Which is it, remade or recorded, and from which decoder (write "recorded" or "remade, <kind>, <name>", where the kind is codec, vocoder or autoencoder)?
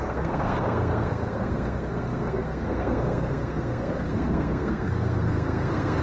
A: remade, codec, SNAC